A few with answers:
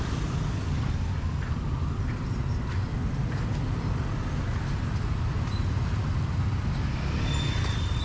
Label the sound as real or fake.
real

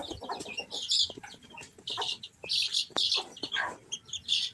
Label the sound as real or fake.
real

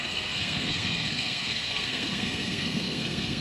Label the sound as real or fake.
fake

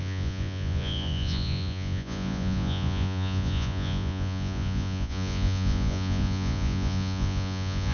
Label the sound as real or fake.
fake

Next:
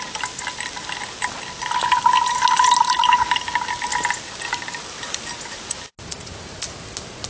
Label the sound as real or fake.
real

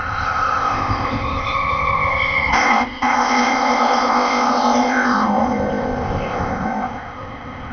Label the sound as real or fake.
fake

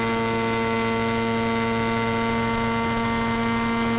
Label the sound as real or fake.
real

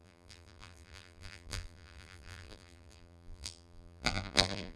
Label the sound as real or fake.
fake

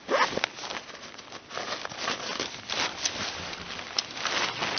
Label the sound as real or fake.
real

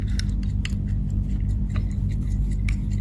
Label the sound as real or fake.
real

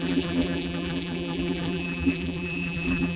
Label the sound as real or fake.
fake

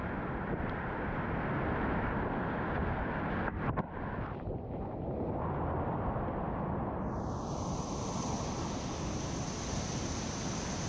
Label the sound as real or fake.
real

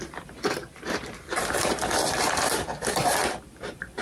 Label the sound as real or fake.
fake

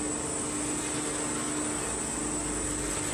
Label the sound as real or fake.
real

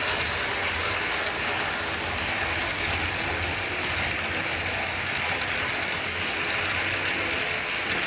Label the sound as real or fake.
real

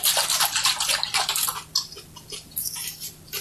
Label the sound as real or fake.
real